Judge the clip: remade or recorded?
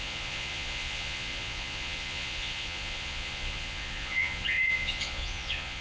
remade